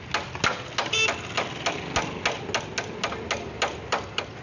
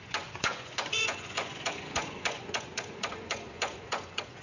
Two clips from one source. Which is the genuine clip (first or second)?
first